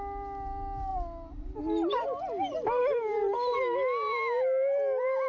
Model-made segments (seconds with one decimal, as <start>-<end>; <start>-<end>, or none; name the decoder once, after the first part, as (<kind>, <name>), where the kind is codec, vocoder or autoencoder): none